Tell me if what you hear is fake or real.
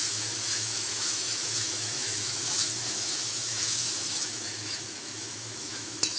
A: fake